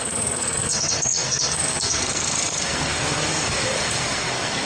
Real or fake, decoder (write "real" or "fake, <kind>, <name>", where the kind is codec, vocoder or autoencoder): fake, codec, SNAC